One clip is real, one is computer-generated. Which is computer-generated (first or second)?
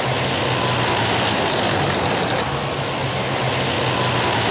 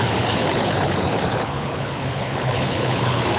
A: second